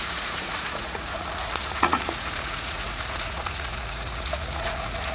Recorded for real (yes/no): no